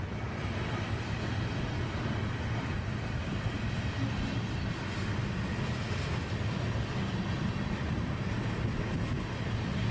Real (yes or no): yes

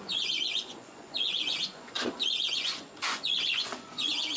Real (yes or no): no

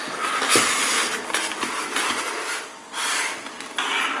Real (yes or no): yes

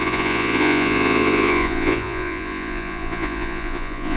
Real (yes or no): no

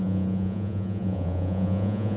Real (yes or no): no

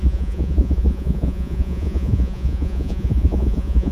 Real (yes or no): no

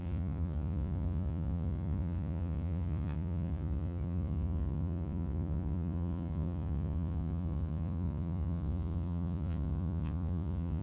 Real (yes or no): no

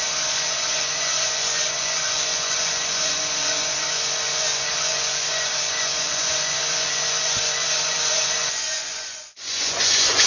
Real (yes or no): no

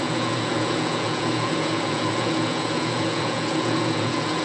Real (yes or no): no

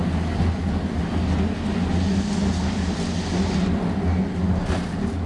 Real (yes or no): yes